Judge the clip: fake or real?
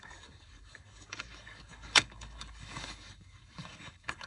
fake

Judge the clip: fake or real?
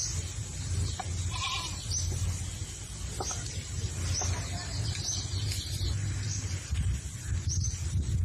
real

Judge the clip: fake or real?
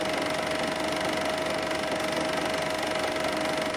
real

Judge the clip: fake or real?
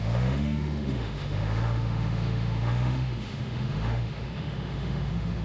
fake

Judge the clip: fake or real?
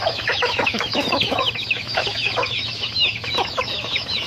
fake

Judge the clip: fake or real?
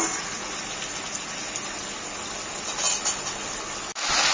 real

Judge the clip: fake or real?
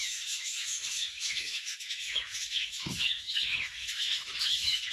fake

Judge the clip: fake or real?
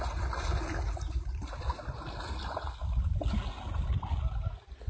real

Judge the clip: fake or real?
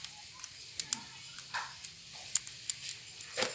real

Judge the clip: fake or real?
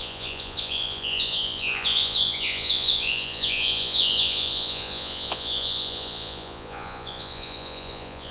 fake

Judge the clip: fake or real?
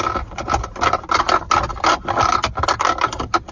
real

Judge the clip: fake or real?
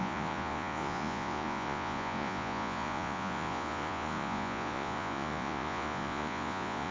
fake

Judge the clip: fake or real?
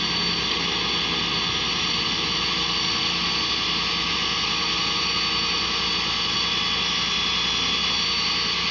real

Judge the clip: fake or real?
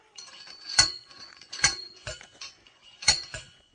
fake